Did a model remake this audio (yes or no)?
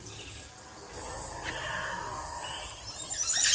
no